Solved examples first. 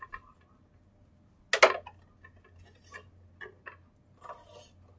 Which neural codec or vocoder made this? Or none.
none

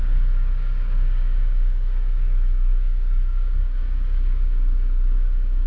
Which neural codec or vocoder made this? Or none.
codec, DAC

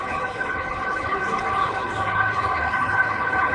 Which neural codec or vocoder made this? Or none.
codec, HILCodec